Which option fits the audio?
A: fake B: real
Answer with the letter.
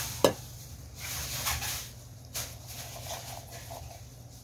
B